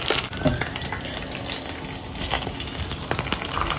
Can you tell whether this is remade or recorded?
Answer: recorded